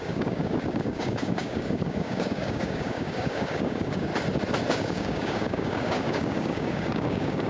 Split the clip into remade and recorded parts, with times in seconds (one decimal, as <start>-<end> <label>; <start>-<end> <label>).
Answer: 0.0-4.1 remade; 4.1-4.7 recorded; 4.7-7.5 remade